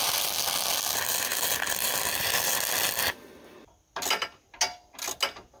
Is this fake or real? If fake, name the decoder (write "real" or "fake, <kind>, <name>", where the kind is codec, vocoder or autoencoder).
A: real